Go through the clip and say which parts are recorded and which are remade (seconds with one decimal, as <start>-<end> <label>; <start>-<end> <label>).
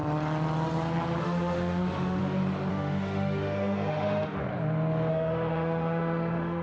0.0-1.2 recorded; 1.2-2.2 remade; 2.2-2.7 recorded; 2.7-4.4 remade; 4.4-5.1 recorded; 5.1-6.6 remade